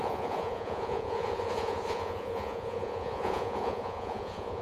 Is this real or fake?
fake